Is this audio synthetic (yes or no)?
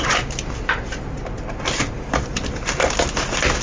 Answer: no